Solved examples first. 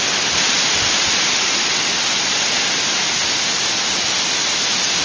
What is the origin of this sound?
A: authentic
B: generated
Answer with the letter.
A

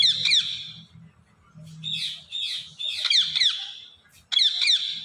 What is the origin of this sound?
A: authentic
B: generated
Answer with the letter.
A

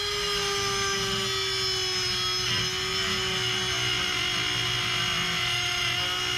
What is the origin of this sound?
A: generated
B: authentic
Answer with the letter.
B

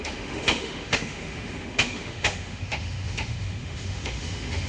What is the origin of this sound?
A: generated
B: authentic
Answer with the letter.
A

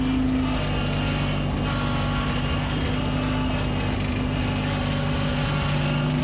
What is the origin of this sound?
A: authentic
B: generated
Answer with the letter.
A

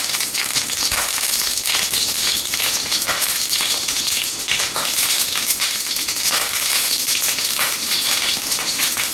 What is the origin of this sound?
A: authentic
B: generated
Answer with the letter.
B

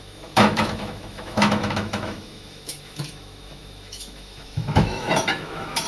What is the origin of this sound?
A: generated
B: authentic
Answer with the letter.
A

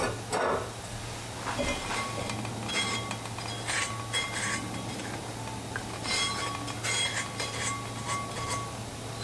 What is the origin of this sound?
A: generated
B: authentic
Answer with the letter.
B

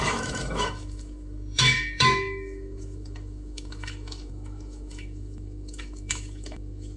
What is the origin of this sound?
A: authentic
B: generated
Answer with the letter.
B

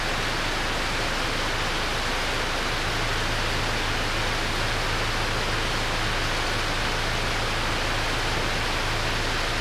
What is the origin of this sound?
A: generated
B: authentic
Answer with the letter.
B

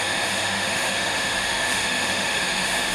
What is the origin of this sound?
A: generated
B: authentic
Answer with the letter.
A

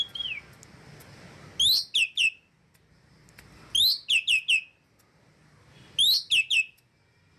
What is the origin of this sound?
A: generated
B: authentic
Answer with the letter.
B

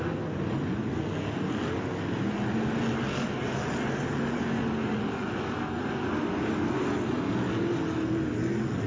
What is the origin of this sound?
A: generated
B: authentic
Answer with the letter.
B